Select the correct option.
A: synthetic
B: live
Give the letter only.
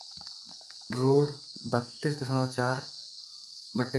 A